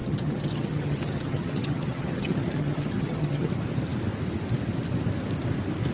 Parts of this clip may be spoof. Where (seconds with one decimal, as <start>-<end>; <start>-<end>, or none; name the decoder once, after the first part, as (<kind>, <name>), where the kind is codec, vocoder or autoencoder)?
0.0-3.5 (vocoder, HiFi-GAN)